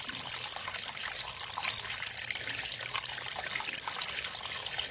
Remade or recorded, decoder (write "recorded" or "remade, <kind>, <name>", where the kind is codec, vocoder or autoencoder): recorded